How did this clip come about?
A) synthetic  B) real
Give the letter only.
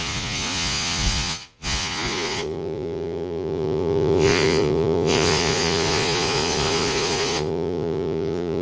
A